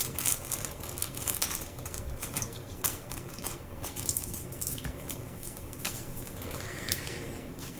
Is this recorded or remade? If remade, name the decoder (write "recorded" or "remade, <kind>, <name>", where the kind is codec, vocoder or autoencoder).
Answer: remade, codec, SNAC